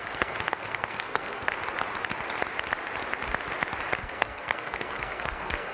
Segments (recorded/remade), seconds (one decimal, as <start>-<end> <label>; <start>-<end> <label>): 0.0-1.5 remade; 1.5-4.0 recorded; 4.0-5.7 remade